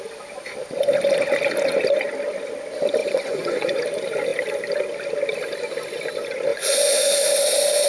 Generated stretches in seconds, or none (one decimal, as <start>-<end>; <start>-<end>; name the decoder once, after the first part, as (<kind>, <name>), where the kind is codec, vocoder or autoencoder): 3.0-3.8 (vocoder, Vocos); 6.5-7.1